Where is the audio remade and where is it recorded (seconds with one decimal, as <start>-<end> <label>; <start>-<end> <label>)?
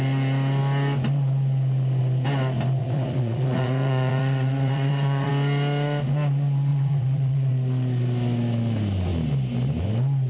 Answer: 0.0-2.8 recorded; 2.8-5.3 remade; 5.3-6.7 recorded; 6.7-7.5 remade; 7.5-10.3 recorded